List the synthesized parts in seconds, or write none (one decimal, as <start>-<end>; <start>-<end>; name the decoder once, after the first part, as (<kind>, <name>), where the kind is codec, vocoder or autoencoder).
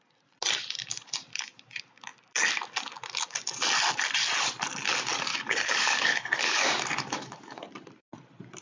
5.3-7.7 (codec, DAC)